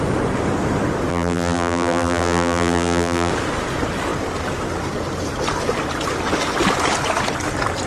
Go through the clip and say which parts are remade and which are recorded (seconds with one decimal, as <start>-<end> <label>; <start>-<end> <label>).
0.0-1.1 recorded; 1.1-3.3 remade; 3.3-7.9 recorded

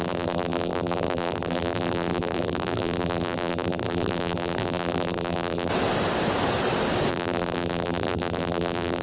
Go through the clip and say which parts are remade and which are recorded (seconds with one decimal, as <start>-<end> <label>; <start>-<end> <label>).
0.0-5.7 remade; 5.7-7.1 recorded; 7.1-9.0 remade

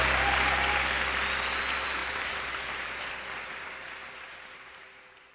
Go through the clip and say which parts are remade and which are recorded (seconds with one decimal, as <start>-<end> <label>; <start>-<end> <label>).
0.0-2.0 recorded; 2.0-5.3 remade

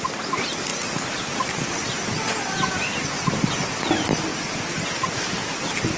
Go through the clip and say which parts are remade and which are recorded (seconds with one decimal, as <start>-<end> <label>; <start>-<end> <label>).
0.0-0.7 recorded; 0.7-2.1 remade; 2.1-6.0 recorded